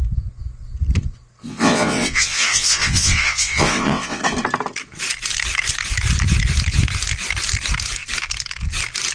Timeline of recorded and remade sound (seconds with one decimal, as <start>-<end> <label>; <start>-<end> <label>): 0.0-1.4 recorded; 1.4-4.2 remade; 4.2-9.1 recorded